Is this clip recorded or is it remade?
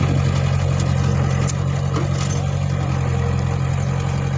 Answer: recorded